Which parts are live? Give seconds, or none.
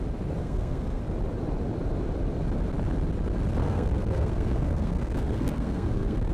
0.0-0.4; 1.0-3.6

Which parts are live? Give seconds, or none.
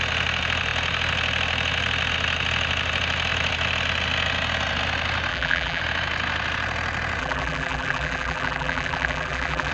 0.0-5.3; 5.8-7.2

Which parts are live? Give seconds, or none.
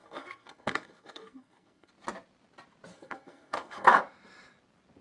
1.9-2.9; 4.0-5.0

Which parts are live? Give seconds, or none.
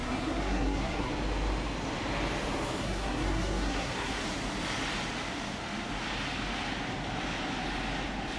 1.1-2.8; 4.2-8.4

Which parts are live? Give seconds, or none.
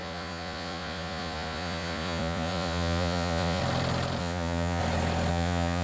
3.6-4.2; 4.8-5.3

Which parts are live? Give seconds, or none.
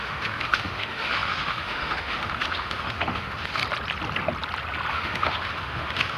3.6-4.9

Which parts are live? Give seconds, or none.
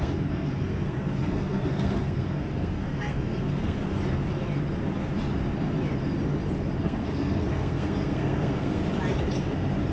3.8-6.8; 8.8-9.9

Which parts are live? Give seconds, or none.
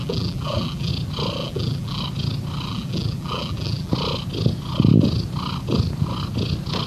0.9-1.4; 2.0-2.7; 3.9-6.9